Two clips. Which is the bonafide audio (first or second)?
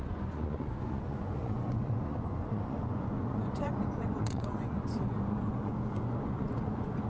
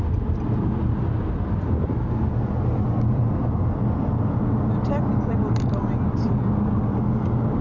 second